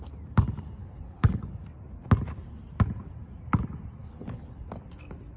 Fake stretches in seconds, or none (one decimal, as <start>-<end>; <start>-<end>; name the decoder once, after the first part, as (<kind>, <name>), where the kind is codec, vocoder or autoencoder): 0.8-1.4 (codec, HILCodec); 4.0-4.6